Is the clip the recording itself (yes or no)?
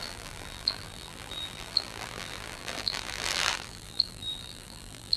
no